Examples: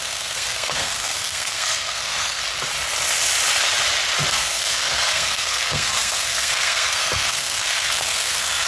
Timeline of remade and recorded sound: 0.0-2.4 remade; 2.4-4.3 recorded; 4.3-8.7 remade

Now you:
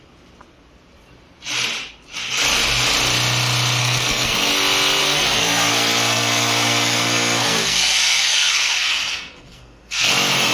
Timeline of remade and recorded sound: 0.0-3.8 recorded; 3.8-4.5 remade; 4.5-5.0 recorded; 5.0-10.1 remade; 10.1-10.5 recorded

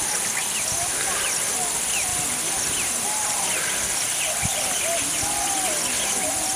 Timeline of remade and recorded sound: 0.0-6.6 recorded

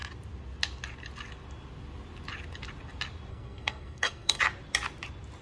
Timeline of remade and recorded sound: 0.0-3.3 recorded; 3.3-4.4 remade; 4.4-5.4 recorded

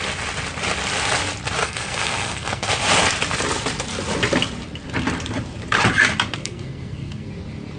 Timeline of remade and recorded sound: 0.0-1.6 recorded; 1.6-2.7 remade; 2.7-6.4 recorded; 6.4-7.3 remade; 7.3-7.8 recorded

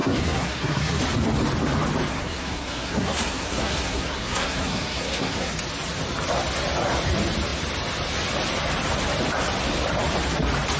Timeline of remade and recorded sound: 0.0-1.0 remade; 1.0-2.1 recorded; 2.1-5.5 remade; 5.5-10.8 recorded